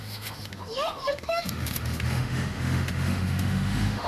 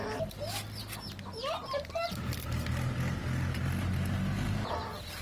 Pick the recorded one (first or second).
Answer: second